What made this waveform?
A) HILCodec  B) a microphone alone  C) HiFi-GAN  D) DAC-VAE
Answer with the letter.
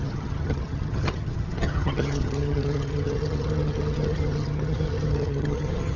C